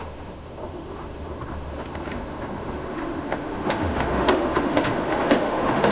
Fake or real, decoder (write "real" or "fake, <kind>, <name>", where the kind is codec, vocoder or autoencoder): fake, autoencoder, DAC-VAE